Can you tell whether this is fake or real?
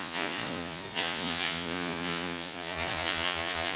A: fake